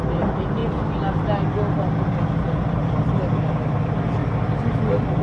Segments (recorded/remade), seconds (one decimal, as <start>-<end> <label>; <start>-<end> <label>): 0.0-5.2 recorded